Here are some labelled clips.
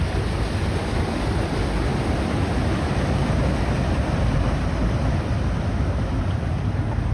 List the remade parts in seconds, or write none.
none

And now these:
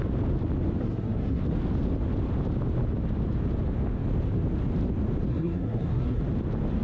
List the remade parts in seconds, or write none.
0.8-1.4 (codec, SNAC); 5.3-6.2

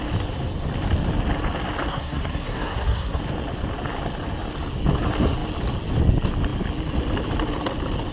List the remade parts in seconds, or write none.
1.9-3.2 (codec, SNAC)

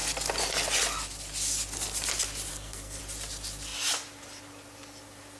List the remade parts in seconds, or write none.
2.5-3.0 (codec, SNAC)

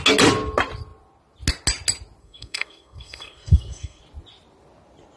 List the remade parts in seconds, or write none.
2.2-4.0 (codec, SNAC)

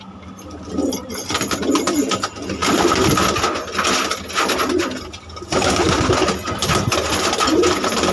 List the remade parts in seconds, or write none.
none